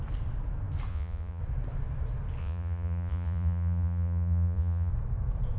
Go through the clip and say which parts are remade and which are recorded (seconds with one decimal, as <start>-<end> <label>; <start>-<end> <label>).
0.0-0.9 recorded; 0.9-1.4 remade; 1.4-2.4 recorded; 2.4-4.9 remade; 4.9-5.6 recorded